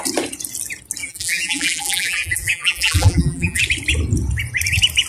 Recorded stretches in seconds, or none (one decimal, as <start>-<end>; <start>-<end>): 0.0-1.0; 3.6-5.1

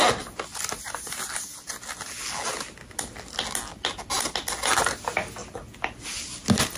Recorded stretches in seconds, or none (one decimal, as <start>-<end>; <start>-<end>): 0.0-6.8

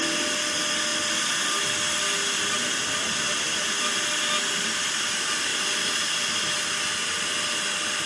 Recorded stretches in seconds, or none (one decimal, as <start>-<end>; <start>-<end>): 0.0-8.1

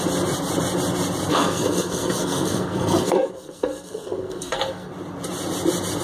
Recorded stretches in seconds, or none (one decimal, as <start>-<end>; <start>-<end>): 0.0-1.3; 4.9-6.0